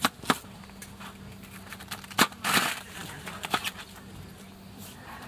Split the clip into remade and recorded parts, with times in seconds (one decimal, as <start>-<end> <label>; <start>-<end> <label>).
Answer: 0.0-5.3 recorded